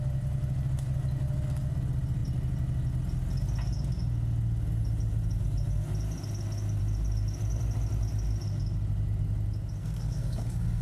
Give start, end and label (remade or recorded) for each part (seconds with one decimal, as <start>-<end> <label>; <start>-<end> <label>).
0.0-9.8 recorded; 9.8-10.8 remade